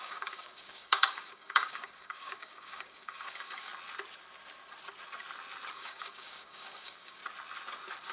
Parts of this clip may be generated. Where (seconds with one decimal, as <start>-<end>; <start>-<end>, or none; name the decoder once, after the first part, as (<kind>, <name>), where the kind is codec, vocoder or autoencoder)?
0.0-3.7 (codec, DAC); 5.7-7.2

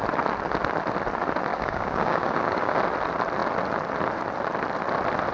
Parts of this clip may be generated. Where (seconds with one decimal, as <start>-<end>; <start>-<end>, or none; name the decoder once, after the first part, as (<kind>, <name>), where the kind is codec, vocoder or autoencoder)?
1.5-2.8 (codec, DAC)

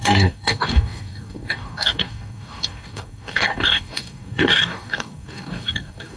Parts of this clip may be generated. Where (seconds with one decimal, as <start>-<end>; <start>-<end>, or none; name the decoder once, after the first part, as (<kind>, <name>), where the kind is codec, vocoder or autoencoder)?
0.0-6.2 (codec, DAC)